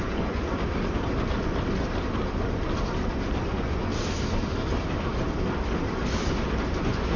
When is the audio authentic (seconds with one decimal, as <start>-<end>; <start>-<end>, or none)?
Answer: 0.4-3.5; 3.9-6.8